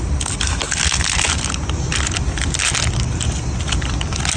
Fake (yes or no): no